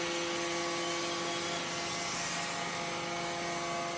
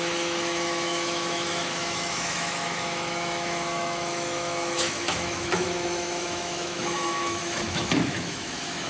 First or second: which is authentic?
first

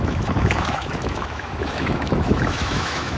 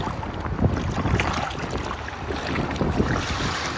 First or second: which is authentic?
second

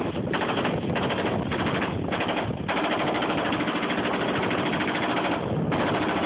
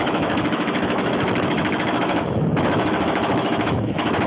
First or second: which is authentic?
first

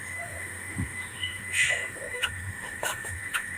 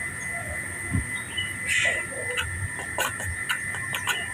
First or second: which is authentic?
second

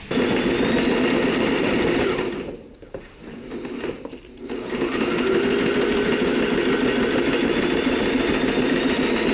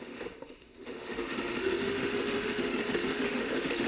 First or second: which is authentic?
first